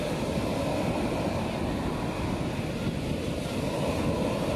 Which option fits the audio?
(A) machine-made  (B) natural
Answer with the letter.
B